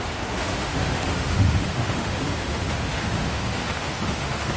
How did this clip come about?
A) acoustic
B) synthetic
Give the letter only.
B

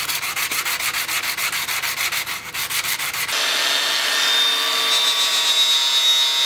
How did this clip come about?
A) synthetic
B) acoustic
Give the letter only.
B